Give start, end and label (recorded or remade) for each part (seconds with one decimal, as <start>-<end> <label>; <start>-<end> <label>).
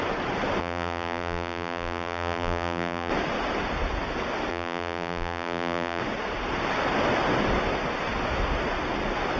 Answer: 0.0-0.6 recorded; 0.6-3.1 remade; 3.1-4.5 recorded; 4.5-6.0 remade; 6.0-9.4 recorded